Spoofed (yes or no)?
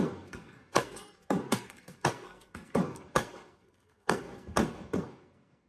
yes